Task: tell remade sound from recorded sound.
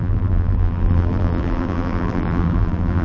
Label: remade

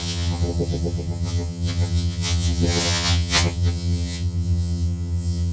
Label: remade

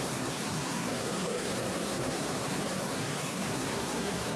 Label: remade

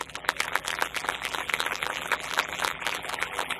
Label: remade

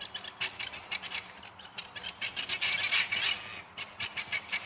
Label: recorded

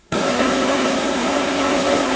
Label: remade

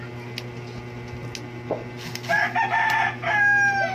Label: recorded